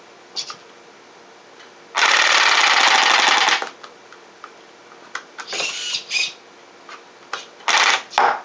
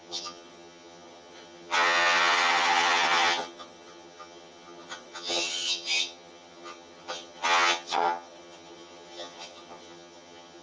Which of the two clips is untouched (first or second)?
first